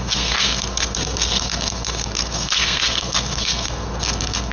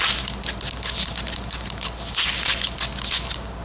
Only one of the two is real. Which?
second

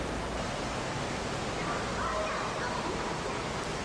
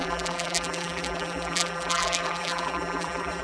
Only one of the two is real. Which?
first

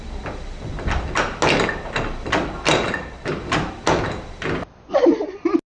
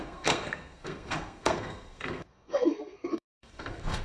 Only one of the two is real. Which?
first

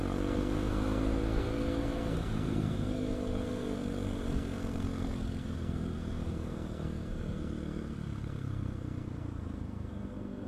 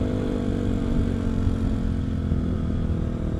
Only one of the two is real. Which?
second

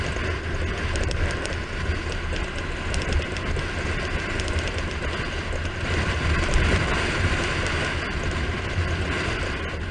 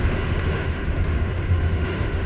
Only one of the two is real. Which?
first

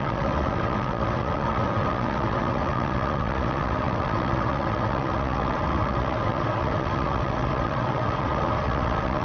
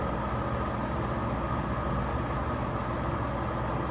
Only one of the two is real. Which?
second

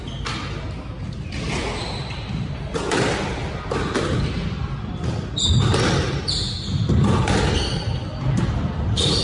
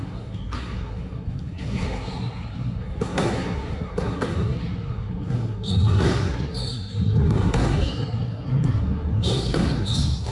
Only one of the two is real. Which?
first